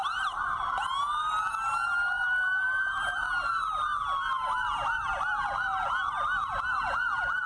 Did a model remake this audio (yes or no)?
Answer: no